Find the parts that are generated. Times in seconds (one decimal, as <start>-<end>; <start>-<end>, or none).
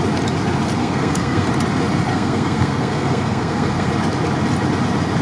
0.8-1.5; 2.1-3.9